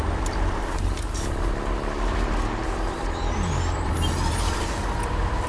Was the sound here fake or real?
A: fake